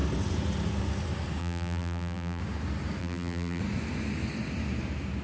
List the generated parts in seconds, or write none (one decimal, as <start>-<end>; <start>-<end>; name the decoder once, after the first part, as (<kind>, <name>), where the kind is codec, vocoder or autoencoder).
1.4-2.4 (vocoder, BigVGAN v2); 3.0-3.6

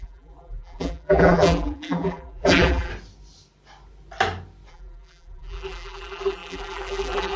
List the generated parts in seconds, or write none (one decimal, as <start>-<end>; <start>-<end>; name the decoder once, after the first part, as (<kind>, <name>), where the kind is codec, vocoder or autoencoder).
0.0-2.9 (vocoder, BigVGAN v2); 4.7-7.4

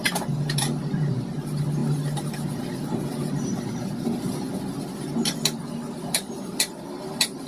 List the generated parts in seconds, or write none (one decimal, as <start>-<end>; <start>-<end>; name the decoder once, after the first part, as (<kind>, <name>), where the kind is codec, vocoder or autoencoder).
none

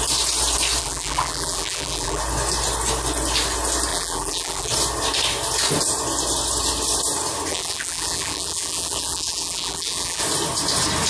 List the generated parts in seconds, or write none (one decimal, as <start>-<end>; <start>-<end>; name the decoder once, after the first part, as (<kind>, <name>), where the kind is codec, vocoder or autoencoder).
0.8-2.2 (vocoder, BigVGAN v2); 3.9-4.7; 7.5-10.2

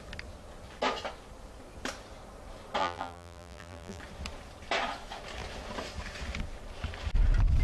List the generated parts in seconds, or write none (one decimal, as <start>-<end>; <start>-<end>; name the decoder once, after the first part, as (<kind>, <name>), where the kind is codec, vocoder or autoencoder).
2.8-4.0 (vocoder, BigVGAN v2)

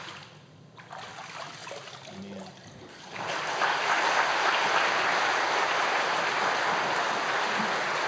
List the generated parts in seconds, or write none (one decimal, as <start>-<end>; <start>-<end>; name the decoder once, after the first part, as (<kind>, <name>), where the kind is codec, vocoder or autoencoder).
none

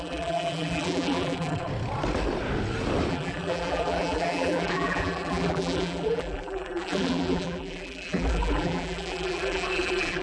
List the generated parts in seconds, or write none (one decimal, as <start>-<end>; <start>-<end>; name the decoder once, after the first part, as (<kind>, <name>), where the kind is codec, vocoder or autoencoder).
0.0-1.7 (vocoder, BigVGAN v2); 3.1-10.2

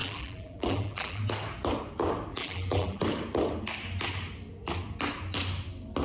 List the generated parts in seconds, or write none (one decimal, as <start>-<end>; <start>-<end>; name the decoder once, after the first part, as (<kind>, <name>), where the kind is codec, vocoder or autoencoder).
0.0-1.2 (vocoder, BigVGAN v2); 2.3-3.0